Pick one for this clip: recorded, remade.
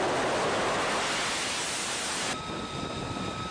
recorded